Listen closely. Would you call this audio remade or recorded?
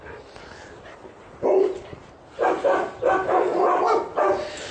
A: recorded